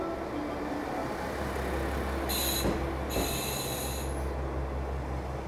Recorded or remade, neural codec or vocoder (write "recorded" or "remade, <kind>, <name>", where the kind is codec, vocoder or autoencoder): recorded